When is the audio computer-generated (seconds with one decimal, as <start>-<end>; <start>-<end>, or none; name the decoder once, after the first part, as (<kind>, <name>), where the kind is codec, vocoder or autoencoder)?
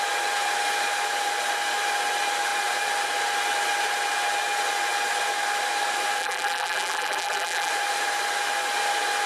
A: 6.2-7.7 (vocoder, BigVGAN v2)